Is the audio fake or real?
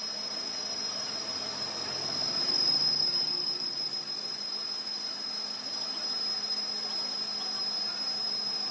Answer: real